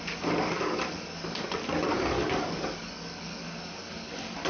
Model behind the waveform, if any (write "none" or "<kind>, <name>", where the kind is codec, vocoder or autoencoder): codec, DAC